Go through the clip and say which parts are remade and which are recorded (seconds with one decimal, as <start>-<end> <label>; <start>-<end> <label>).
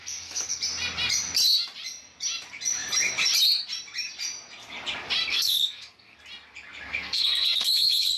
0.0-0.6 remade; 0.6-5.3 recorded; 5.3-6.2 remade; 6.2-6.9 recorded; 6.9-8.2 remade